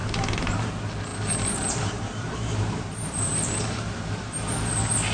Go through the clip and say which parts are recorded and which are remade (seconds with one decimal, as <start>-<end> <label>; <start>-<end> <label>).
0.0-0.7 remade; 0.7-1.1 recorded; 1.1-3.5 remade; 3.5-5.1 recorded